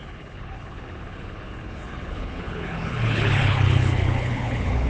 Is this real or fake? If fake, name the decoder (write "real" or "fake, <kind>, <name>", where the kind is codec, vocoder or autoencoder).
fake, codec, HILCodec